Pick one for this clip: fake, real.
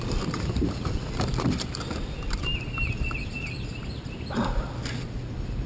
real